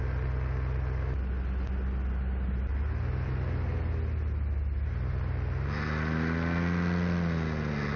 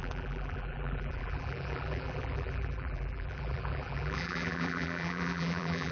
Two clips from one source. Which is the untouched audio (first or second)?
first